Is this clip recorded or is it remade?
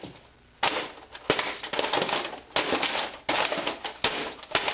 recorded